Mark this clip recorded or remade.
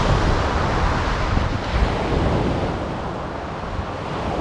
recorded